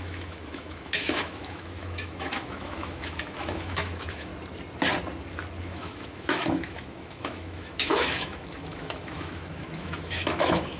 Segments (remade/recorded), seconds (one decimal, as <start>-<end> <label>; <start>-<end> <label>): 0.0-4.3 remade; 4.3-5.6 recorded; 5.6-10.8 remade